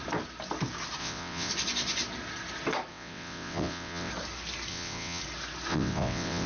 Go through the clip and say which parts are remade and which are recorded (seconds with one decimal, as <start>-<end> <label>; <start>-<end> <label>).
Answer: 0.0-1.0 recorded; 1.0-1.5 remade; 1.5-2.9 recorded; 2.9-4.1 remade; 4.1-4.7 recorded; 4.7-5.2 remade; 5.2-5.7 recorded; 5.7-6.5 remade